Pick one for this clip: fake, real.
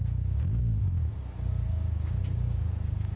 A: fake